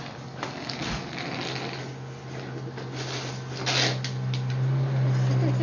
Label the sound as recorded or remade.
recorded